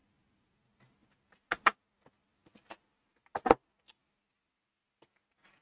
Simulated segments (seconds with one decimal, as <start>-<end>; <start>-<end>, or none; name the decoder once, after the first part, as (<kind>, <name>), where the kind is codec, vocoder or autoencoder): none